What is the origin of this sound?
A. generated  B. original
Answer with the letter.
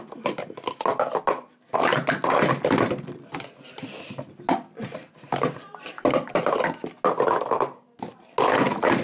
B